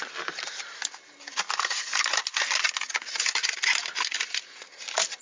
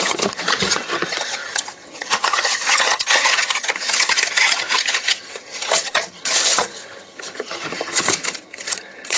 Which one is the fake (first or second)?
second